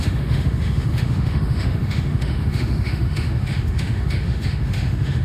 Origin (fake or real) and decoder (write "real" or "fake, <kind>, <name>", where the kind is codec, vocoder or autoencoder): fake, autoencoder, DAC-VAE